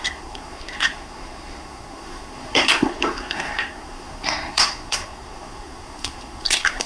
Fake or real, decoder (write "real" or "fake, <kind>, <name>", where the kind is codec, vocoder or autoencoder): fake, codec, SNAC